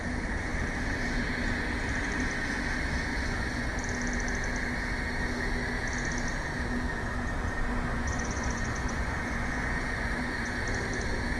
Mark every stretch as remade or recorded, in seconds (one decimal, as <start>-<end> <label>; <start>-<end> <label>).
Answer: 0.0-3.1 recorded; 3.1-3.7 remade; 3.7-7.9 recorded; 7.9-10.5 remade; 10.5-11.4 recorded